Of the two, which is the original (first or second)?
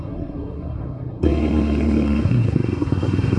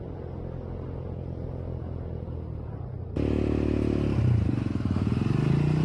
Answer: second